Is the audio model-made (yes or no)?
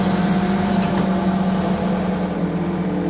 no